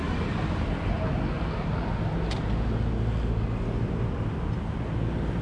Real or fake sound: real